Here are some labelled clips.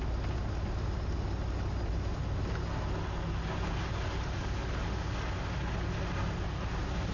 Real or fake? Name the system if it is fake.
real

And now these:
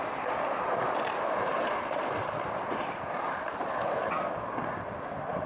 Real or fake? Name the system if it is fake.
real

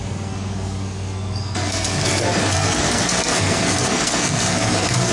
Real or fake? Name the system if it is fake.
fake, codec, SNAC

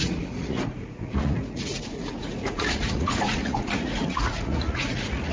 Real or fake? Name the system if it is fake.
fake, vocoder, Vocos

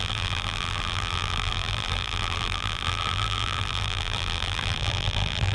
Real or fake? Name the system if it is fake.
fake, vocoder, BigVGAN v2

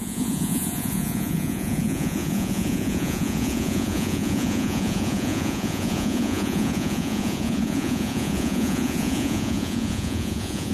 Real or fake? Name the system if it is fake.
fake, vocoder, Vocos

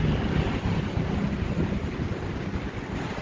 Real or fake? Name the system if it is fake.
real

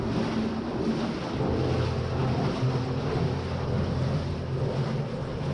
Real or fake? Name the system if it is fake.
real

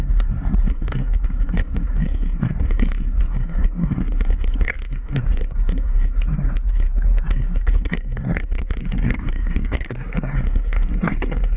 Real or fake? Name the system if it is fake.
fake, codec, SNAC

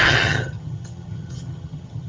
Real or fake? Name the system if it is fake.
fake, vocoder, HiFi-GAN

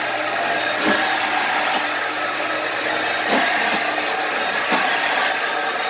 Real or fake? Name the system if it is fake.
real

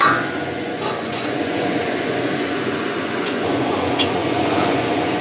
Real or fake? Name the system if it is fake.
fake, vocoder, Vocos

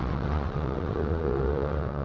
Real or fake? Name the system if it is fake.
fake, vocoder, WaveNeXt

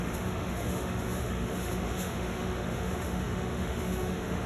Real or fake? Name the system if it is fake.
fake, autoencoder, DAC-VAE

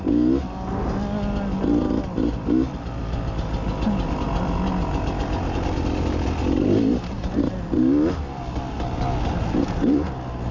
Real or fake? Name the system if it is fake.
real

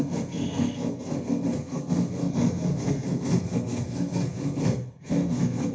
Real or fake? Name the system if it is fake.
fake, codec, SNAC